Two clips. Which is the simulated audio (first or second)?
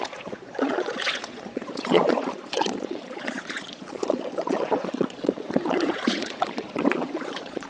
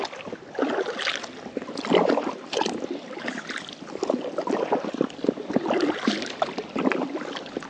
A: first